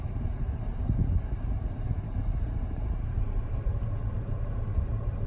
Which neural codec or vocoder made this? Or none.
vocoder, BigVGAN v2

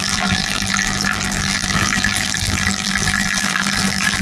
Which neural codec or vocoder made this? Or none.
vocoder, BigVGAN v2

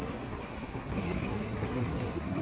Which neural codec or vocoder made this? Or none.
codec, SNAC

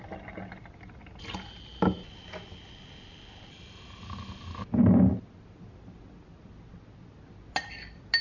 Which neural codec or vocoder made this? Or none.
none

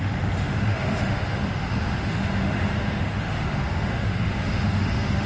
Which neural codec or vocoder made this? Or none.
autoencoder, DAC-VAE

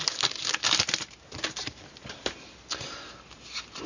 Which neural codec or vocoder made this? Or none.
none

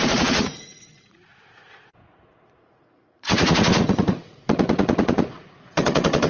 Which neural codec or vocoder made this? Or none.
vocoder, Vocos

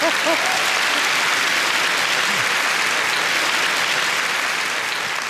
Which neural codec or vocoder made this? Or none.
none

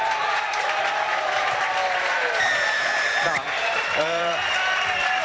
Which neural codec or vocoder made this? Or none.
vocoder, BigVGAN v2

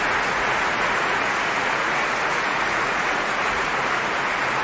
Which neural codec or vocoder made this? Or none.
vocoder, Vocos